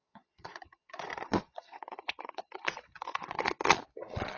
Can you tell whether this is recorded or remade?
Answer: remade